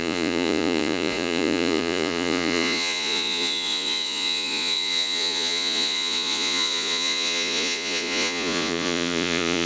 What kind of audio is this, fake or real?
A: fake